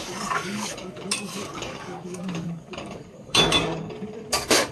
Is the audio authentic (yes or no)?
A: no